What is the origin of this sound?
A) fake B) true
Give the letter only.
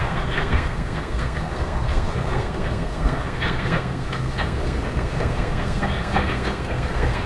A